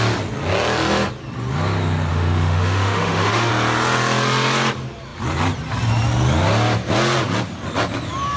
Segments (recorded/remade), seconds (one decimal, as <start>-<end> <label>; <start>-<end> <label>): 0.0-2.1 recorded; 2.1-3.5 remade; 3.5-8.4 recorded